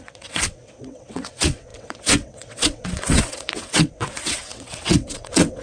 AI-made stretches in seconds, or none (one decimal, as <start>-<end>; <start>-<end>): 0.0-5.6